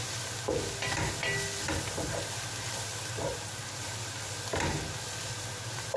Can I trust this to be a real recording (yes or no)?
yes